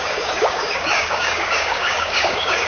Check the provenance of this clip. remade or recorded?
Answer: remade